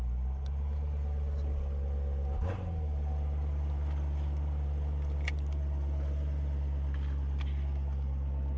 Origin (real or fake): real